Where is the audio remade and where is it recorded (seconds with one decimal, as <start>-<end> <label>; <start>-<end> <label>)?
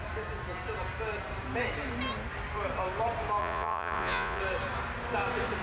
0.0-3.4 recorded; 3.4-4.4 remade; 4.4-5.6 recorded